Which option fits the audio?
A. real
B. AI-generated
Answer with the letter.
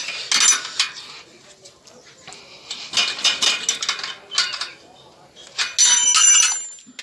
A